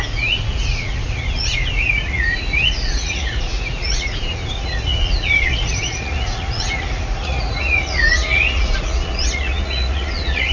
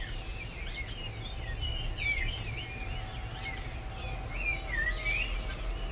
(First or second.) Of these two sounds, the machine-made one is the first